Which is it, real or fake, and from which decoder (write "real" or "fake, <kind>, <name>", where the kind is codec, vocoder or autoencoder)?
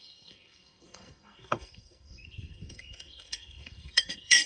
fake, codec, SNAC